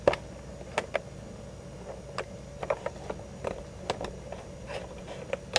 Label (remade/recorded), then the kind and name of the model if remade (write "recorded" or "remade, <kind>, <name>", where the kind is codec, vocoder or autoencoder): recorded